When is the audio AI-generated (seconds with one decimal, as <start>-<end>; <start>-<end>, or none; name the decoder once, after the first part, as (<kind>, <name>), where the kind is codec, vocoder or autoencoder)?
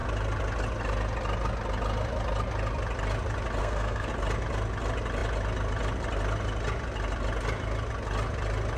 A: 3.6-4.1 (codec, SNAC)